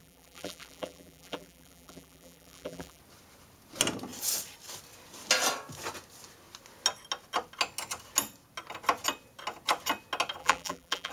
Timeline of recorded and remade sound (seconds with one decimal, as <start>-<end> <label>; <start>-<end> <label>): 0.0-3.0 remade; 3.0-10.4 recorded; 10.4-11.1 remade